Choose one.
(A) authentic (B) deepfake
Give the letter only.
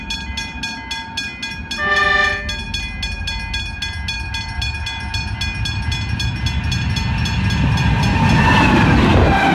A